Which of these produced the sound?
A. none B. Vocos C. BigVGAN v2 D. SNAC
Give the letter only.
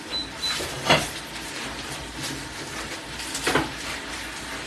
A